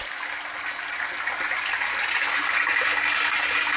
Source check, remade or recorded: recorded